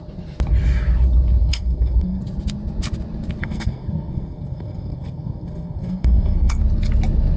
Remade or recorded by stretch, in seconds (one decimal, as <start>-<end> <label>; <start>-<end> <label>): 0.0-1.4 recorded; 1.4-2.2 remade; 2.2-3.4 recorded; 3.4-6.6 remade; 6.6-7.4 recorded